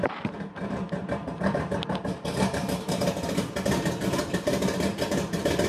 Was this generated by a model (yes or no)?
yes